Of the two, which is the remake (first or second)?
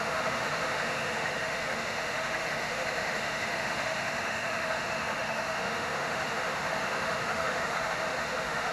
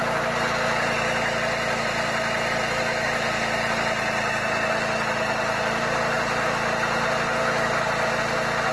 first